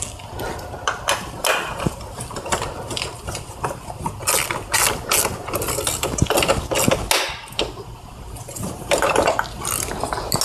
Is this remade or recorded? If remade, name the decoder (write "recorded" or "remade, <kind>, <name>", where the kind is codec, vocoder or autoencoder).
recorded